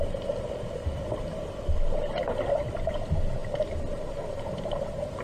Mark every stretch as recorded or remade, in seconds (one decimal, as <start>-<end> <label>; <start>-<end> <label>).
0.0-5.2 recorded